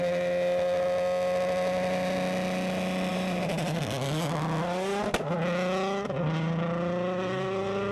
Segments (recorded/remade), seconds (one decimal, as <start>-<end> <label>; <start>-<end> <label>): 0.0-3.1 recorded; 3.1-3.8 remade; 3.8-7.9 recorded